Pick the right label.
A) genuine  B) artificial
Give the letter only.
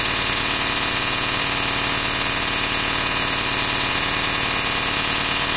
A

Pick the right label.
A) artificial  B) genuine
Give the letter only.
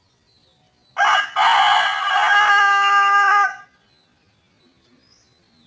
B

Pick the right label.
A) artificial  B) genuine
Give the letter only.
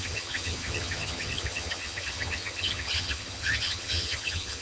A